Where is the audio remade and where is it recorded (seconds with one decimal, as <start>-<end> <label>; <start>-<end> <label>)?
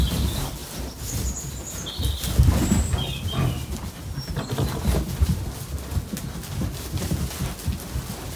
0.0-8.4 recorded